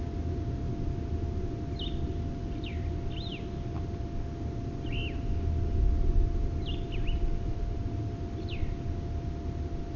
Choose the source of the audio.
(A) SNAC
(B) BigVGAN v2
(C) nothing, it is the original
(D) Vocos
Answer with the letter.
C